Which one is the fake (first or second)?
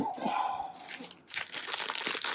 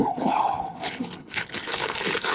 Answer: second